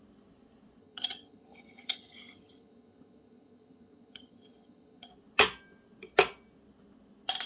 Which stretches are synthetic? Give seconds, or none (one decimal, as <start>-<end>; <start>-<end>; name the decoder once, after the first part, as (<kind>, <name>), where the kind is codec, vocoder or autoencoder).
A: 0.8-5.1 (vocoder, HiFi-GAN)